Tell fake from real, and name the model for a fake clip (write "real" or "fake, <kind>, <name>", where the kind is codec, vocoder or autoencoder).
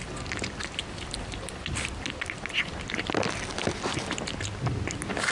real